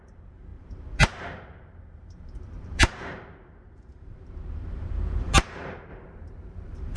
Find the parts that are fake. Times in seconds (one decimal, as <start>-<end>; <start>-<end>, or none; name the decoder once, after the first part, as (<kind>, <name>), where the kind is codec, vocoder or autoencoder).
0.0-7.0 (vocoder, BigVGAN v2)